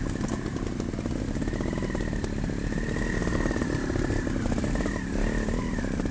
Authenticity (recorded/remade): recorded